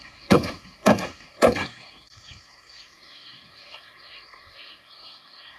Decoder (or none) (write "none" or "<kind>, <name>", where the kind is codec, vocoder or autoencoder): codec, SNAC